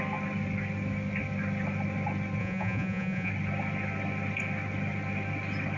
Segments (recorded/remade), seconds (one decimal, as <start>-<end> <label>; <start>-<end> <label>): 0.0-2.4 recorded; 2.4-3.3 remade; 3.3-5.8 recorded